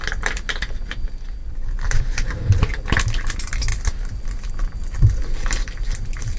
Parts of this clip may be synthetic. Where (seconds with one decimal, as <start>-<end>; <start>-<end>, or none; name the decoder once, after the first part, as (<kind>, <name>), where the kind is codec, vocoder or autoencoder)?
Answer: 1.4-2.7 (vocoder, BigVGAN v2)